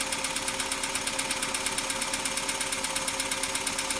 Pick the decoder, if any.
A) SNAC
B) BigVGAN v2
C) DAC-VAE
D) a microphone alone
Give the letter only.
D